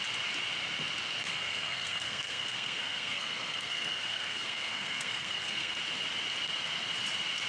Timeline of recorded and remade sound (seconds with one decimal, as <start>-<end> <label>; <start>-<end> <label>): 0.0-1.3 recorded; 1.3-5.8 remade; 5.8-7.5 recorded